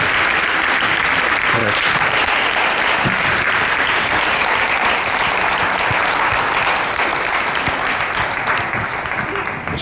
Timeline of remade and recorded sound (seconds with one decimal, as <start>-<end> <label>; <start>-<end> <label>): 0.0-1.6 recorded; 1.6-6.3 remade; 6.3-9.8 recorded